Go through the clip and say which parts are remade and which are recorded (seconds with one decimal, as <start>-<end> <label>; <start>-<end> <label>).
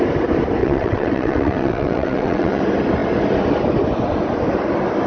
0.0-0.6 recorded; 0.6-2.6 remade; 2.6-5.1 recorded